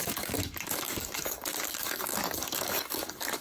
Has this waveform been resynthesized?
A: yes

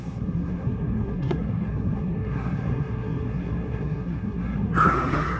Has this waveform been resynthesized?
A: yes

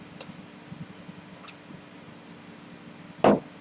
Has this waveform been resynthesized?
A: no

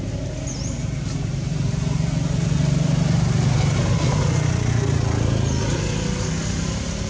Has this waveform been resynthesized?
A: no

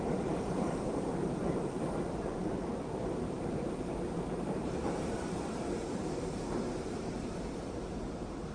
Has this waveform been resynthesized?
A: yes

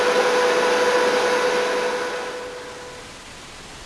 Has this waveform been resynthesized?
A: no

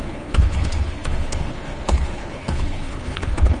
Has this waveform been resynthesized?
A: yes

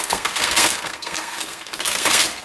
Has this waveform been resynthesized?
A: yes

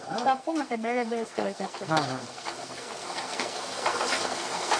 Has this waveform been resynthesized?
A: yes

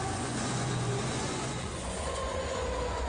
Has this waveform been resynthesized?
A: yes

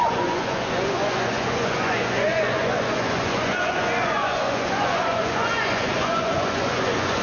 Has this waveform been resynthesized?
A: yes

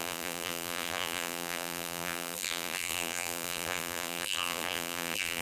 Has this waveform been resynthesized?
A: yes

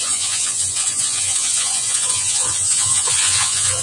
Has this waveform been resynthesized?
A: yes